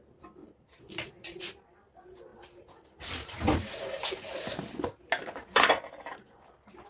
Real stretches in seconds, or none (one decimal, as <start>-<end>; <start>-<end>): 0.0-0.4; 1.4-6.9

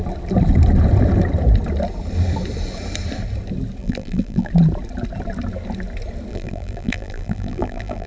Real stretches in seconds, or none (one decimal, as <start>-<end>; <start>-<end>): 0.0-3.8; 4.5-6.3

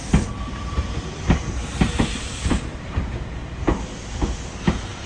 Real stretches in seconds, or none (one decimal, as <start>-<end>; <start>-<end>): 3.1-5.1

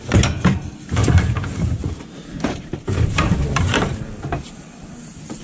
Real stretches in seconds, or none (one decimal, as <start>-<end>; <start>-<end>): 0.0-1.0; 3.2-5.4